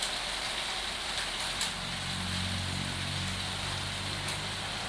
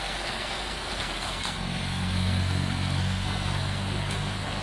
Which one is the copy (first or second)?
second